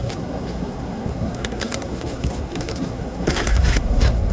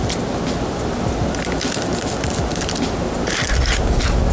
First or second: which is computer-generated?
first